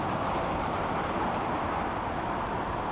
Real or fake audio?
real